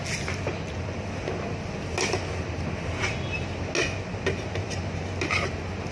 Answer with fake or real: real